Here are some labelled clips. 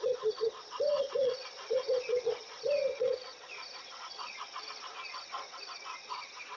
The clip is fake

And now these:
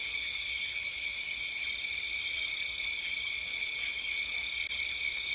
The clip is real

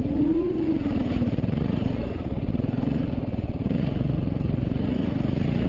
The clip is fake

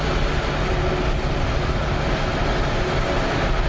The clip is real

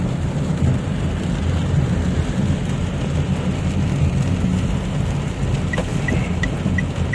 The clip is real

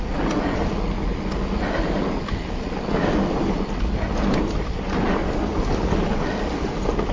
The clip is real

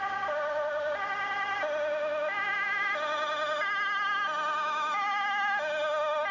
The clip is real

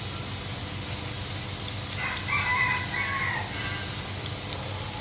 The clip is real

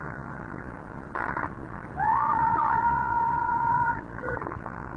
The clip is fake